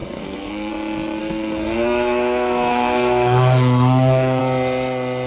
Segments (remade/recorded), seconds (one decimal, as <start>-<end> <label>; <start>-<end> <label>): 0.0-0.7 remade; 0.7-1.2 recorded; 1.2-4.4 remade; 4.4-5.3 recorded